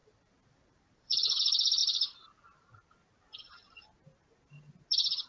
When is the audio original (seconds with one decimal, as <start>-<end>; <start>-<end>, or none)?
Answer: 1.4-1.8; 2.9-5.3